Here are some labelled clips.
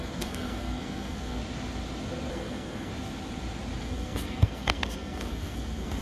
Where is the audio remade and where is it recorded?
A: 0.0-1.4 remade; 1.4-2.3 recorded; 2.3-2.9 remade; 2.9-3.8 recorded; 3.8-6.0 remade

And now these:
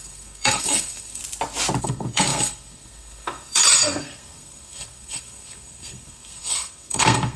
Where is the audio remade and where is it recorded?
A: 0.0-1.2 remade; 1.2-1.8 recorded; 1.8-7.4 remade